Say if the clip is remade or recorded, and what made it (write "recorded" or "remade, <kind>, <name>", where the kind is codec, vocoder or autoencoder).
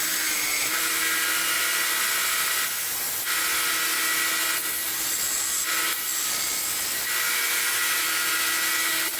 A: recorded